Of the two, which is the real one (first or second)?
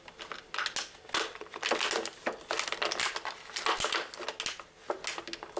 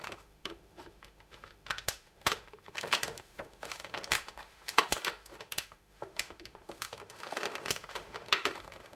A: first